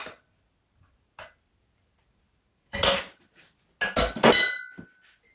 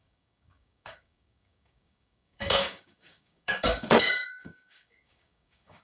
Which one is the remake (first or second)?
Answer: second